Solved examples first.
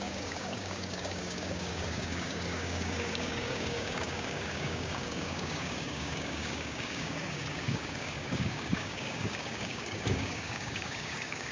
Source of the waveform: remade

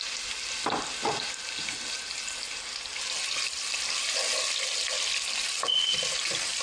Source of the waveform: recorded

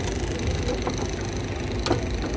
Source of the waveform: recorded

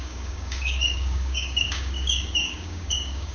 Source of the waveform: remade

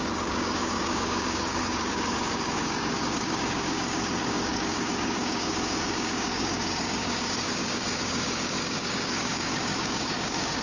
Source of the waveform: remade